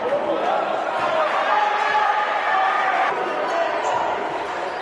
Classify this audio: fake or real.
real